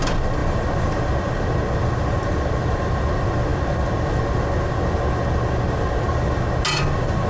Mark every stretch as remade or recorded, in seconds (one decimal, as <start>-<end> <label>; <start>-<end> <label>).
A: 0.0-7.3 recorded